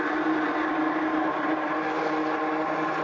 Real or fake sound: real